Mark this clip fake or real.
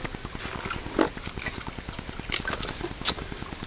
real